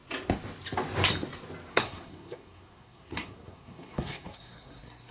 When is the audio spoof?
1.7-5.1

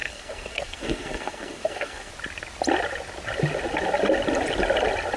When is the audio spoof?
0.0-2.1

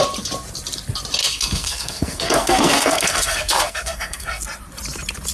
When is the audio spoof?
1.2-4.4

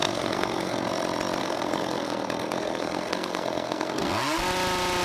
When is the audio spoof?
0.0-0.9; 1.4-4.4

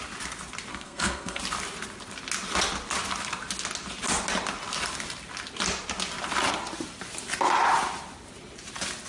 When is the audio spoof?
0.7-1.4

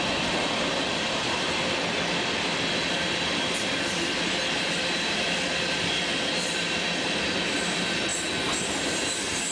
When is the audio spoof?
none

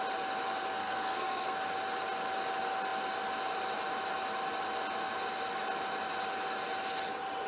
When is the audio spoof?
0.8-1.6